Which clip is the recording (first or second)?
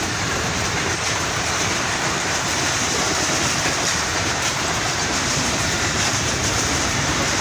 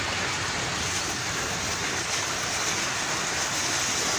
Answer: second